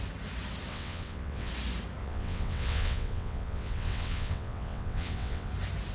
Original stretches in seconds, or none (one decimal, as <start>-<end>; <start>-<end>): 0.0-0.7; 1.5-2.0; 5.5-5.9